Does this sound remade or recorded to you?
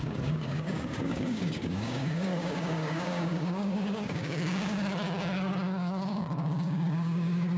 remade